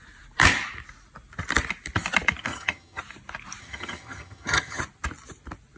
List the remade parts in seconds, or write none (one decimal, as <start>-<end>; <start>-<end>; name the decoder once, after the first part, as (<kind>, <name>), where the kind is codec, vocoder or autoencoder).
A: 2.5-3.0 (vocoder, HiFi-GAN); 3.6-4.8

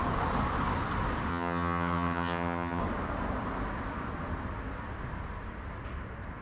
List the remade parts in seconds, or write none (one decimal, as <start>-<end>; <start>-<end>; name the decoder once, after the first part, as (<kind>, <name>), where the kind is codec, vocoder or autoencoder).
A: 1.3-2.8 (vocoder, HiFi-GAN)

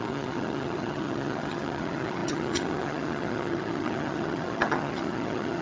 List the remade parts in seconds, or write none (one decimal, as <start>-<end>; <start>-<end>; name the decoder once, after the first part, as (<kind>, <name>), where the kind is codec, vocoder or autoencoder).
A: 0.0-5.6 (vocoder, HiFi-GAN)

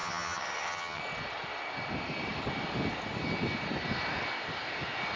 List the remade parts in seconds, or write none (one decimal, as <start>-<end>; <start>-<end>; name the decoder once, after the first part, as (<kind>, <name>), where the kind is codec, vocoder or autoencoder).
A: 0.0-1.0 (vocoder, HiFi-GAN)

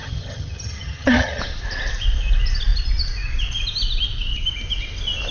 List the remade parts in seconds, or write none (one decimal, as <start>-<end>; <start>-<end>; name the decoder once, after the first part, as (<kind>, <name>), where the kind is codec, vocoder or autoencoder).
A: 0.0-1.4 (vocoder, HiFi-GAN)